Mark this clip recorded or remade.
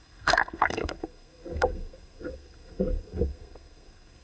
remade